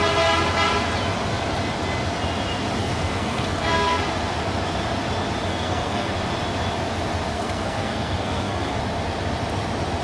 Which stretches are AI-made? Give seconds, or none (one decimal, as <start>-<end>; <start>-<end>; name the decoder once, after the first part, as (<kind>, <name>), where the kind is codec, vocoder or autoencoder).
2.8-4.0 (codec, SNAC); 5.5-6.1; 7.3-8.8